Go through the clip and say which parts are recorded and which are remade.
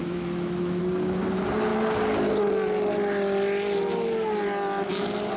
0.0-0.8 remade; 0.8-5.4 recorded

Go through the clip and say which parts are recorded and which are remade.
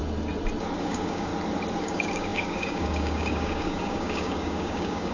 0.0-0.8 recorded; 0.8-1.3 remade; 1.3-1.8 recorded; 1.8-5.1 remade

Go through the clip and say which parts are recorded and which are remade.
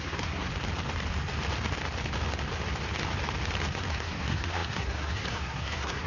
0.0-0.5 remade; 0.5-3.9 recorded; 3.9-6.1 remade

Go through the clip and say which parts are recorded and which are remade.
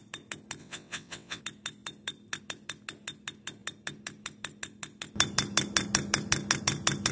0.0-0.6 recorded; 0.6-1.4 remade; 1.4-7.1 recorded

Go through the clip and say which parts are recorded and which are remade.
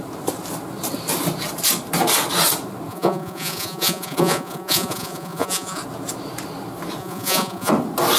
0.0-2.9 recorded; 2.9-5.8 remade; 5.8-7.0 recorded; 7.0-7.7 remade; 7.7-8.2 recorded